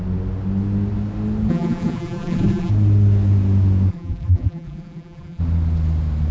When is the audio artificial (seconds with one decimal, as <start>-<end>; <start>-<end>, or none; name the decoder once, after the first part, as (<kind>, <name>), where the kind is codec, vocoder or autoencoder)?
1.5-2.7 (vocoder, BigVGAN v2); 3.9-5.4